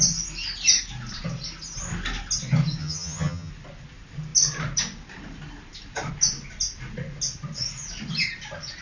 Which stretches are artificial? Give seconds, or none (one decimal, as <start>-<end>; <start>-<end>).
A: 2.8-3.5